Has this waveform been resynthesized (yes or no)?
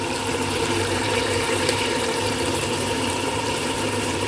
yes